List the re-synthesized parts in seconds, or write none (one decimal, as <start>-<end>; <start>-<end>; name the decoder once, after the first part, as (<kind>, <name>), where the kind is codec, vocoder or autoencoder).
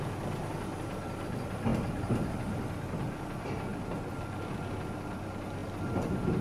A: none